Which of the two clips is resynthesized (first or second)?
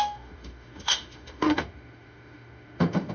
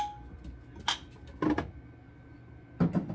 first